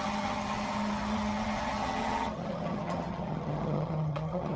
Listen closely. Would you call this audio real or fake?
fake